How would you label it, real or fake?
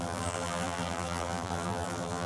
fake